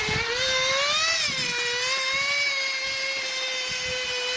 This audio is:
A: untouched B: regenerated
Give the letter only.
A